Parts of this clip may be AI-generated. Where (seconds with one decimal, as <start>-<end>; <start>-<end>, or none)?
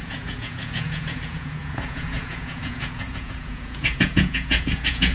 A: 0.0-5.1